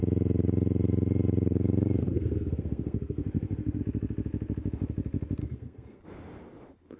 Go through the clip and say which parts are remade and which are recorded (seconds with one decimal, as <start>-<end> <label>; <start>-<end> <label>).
0.0-2.0 recorded; 2.0-3.8 remade; 3.8-5.4 recorded; 5.4-6.0 remade; 6.0-7.0 recorded